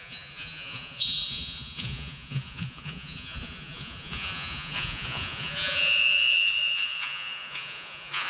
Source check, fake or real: fake